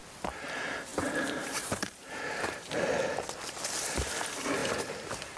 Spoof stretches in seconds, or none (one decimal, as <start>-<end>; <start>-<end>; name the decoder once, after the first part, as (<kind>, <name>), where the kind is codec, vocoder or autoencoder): 0.9-2.9 (vocoder, BigVGAN v2)

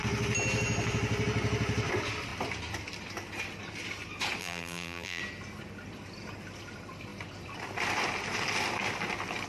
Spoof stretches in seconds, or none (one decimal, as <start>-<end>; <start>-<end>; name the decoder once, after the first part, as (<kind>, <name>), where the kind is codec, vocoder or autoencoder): 4.4-5.2 (vocoder, BigVGAN v2)

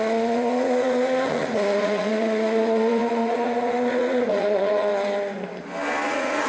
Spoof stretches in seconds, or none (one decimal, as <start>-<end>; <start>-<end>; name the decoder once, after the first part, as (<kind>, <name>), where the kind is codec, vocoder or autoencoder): 0.0-4.9 (vocoder, Vocos); 6.1-6.5

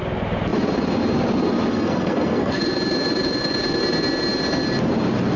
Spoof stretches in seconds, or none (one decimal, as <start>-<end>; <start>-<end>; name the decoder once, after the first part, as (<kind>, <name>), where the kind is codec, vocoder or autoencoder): 1.7-2.6 (codec, SNAC)

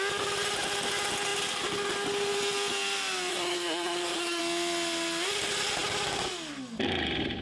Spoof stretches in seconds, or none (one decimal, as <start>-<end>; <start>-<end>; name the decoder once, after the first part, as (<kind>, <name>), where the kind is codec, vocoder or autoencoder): 3.3-4.4 (codec, SNAC)

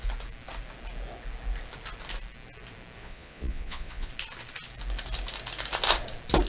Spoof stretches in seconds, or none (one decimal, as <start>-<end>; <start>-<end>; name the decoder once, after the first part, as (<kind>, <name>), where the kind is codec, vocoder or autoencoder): 3.0-4.1 (vocoder, Vocos)

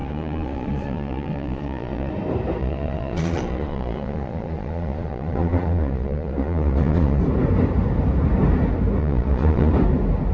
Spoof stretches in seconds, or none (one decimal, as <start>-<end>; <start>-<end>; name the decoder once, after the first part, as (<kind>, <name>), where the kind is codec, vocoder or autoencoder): 0.0-2.1 (vocoder, Vocos); 2.6-7.2; 9.0-9.7

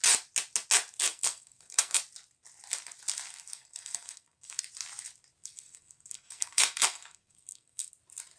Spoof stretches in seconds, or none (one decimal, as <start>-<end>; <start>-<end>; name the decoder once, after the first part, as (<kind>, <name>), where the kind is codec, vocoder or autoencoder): 1.1-2.0 (codec, SNAC); 3.3-4.6; 5.4-7.9